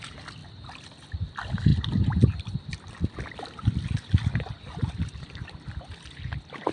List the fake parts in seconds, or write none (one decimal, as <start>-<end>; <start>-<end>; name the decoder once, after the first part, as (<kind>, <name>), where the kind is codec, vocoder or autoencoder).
0.0-0.4 (vocoder, BigVGAN v2); 1.1-1.7; 4.9-6.7